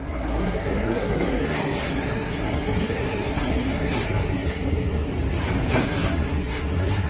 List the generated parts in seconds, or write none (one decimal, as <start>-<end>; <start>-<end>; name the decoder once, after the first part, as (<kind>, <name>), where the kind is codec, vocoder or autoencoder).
0.0-5.1 (codec, SNAC); 5.7-7.1